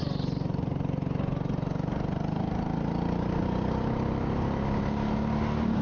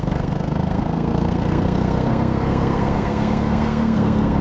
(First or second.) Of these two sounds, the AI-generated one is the second